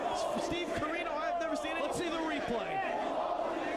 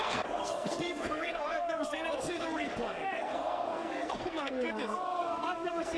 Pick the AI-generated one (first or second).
second